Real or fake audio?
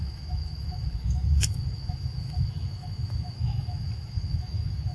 fake